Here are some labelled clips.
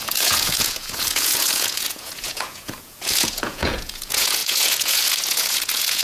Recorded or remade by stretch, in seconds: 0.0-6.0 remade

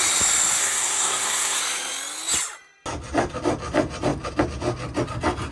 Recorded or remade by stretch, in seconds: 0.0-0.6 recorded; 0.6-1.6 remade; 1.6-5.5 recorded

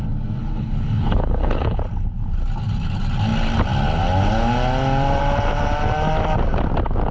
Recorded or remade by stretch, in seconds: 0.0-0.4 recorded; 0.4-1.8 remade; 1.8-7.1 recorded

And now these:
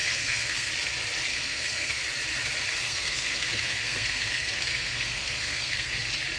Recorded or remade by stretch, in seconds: 0.0-0.7 remade; 0.7-1.3 recorded; 1.3-2.0 remade; 2.0-2.8 recorded; 2.8-6.0 remade; 6.0-6.4 recorded

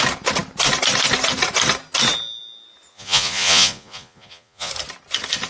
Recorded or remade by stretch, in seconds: 0.0-2.9 recorded; 2.9-4.7 remade; 4.7-5.5 recorded